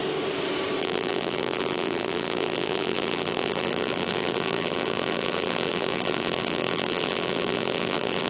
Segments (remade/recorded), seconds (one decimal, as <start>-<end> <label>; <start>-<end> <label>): 0.0-0.8 recorded; 0.8-8.3 remade